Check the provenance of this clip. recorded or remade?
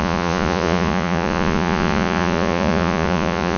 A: remade